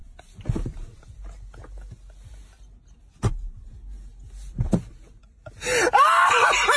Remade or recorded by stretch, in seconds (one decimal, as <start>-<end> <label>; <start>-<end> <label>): 0.0-6.8 recorded

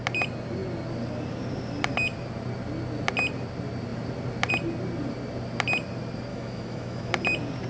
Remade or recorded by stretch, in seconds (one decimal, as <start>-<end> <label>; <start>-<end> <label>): 0.0-6.3 recorded; 6.3-7.1 remade; 7.1-7.7 recorded

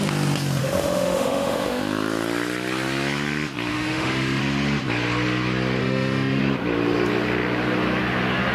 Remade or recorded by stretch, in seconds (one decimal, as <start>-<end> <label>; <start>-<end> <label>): 0.0-0.6 recorded; 0.6-1.8 remade; 1.8-3.7 recorded; 3.7-4.4 remade; 4.4-5.8 recorded; 5.8-6.4 remade; 6.4-8.5 recorded